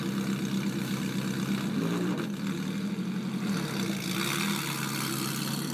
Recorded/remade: recorded